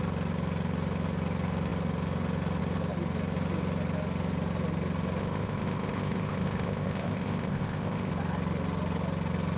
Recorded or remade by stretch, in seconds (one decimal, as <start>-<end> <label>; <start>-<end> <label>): 0.0-5.2 recorded; 5.2-8.1 remade; 8.1-9.6 recorded